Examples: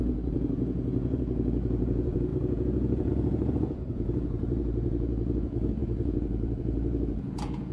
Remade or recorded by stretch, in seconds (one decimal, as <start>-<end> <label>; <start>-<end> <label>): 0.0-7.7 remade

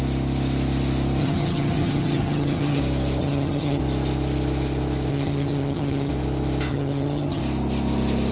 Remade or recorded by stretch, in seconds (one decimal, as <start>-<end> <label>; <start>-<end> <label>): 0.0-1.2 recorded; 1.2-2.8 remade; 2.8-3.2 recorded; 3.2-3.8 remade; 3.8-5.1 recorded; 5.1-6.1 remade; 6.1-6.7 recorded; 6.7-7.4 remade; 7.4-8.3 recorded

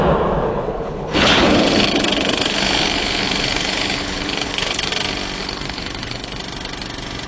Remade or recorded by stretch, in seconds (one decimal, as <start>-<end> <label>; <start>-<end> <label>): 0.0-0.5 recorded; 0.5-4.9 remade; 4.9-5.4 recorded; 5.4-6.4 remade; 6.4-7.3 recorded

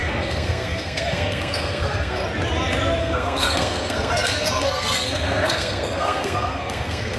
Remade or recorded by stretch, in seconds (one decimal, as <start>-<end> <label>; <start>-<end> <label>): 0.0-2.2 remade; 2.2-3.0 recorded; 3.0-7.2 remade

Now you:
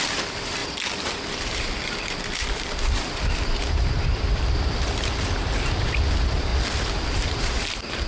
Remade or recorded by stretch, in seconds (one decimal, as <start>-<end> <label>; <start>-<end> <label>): 0.0-0.6 remade; 0.6-3.6 recorded; 3.6-6.5 remade; 6.5-7.1 recorded; 7.1-8.1 remade

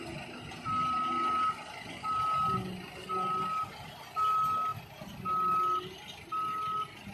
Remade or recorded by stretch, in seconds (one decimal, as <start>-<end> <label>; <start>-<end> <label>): 0.0-7.1 recorded